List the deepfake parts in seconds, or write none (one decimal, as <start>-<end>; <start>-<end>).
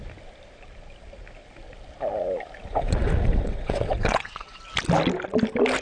2.7-4.6